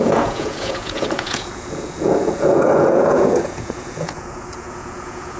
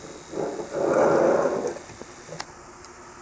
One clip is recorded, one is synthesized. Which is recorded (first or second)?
second